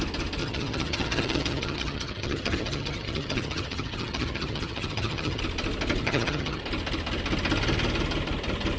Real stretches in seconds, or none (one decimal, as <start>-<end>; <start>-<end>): 0.0-0.4; 5.4-6.0; 6.6-8.8